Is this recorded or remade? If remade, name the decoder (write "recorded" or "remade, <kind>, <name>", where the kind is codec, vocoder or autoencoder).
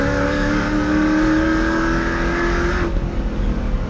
remade, codec, DAC